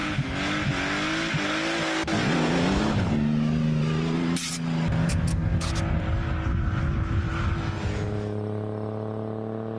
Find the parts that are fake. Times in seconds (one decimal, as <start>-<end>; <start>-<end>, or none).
none